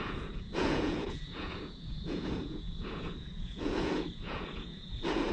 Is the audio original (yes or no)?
no